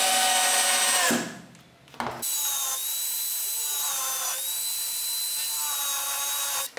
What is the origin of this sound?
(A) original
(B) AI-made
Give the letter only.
A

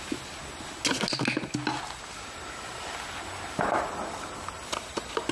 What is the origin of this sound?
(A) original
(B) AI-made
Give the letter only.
A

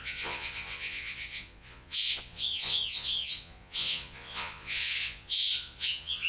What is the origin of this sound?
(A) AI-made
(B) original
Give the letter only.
A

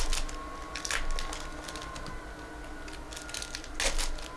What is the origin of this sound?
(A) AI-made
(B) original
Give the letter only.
B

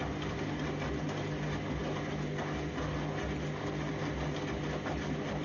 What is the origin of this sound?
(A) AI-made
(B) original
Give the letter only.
B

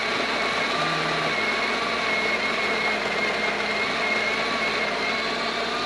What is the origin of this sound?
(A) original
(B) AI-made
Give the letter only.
A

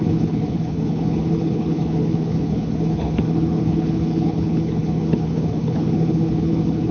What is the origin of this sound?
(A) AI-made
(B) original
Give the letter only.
A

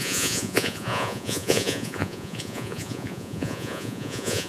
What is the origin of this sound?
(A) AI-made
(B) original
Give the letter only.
A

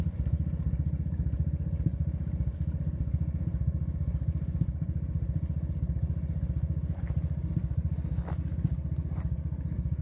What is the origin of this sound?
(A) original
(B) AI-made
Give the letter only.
A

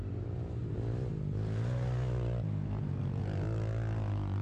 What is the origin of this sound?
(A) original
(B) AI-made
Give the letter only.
A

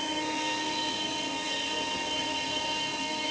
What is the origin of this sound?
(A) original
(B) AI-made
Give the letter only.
B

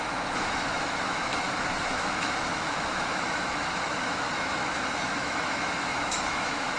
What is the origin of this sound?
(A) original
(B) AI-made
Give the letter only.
B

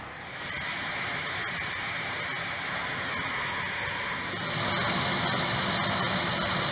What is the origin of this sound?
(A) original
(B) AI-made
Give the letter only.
A